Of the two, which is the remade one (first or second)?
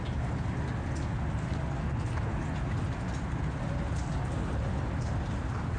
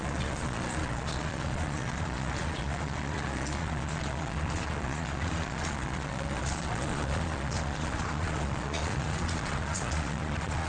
second